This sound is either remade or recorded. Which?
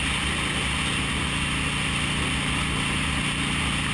recorded